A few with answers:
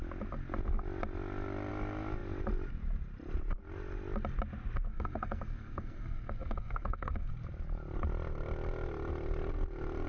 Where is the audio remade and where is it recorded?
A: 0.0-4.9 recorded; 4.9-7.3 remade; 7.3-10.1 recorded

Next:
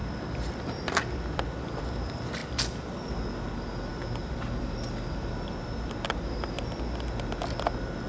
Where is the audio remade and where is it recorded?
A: 0.0-8.1 recorded

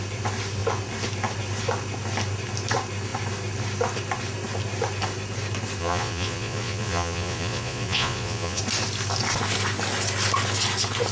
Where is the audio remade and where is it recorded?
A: 0.0-5.8 recorded; 5.8-8.6 remade; 8.6-11.1 recorded

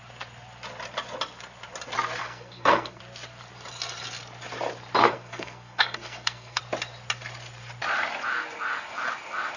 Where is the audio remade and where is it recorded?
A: 0.0-2.2 recorded; 2.2-3.0 remade; 3.0-5.0 recorded; 5.0-6.6 remade; 6.6-9.6 recorded